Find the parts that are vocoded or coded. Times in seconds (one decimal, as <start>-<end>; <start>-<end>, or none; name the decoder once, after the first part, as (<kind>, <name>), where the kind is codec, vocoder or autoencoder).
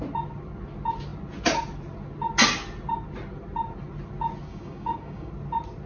4.5-5.3 (codec, DAC)